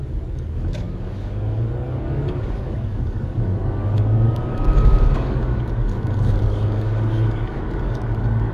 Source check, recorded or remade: remade